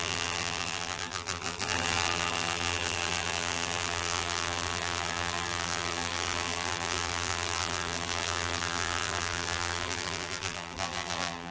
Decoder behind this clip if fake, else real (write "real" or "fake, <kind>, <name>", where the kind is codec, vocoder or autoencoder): fake, vocoder, BigVGAN v2